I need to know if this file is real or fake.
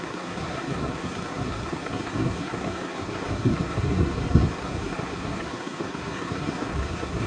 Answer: fake